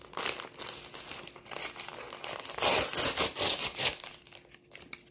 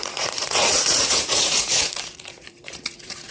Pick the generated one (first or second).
second